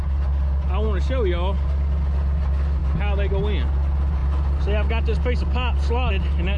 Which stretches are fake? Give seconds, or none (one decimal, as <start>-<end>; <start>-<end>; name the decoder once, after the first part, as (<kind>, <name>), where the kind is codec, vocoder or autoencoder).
none